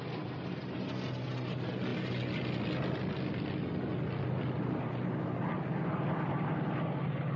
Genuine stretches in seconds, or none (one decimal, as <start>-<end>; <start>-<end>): 0.0-7.4